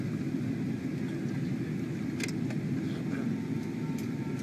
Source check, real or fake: real